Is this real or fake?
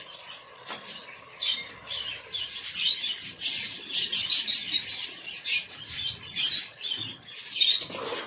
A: real